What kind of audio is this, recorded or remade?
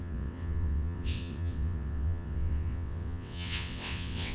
remade